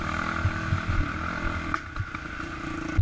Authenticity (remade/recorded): recorded